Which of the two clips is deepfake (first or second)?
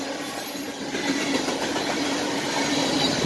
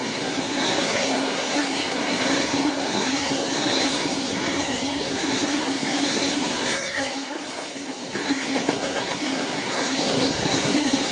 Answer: second